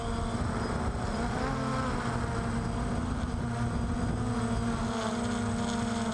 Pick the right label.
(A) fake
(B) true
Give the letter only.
B